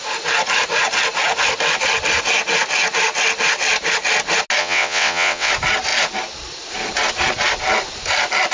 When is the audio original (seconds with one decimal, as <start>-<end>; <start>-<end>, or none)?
0.0-4.6; 5.5-8.5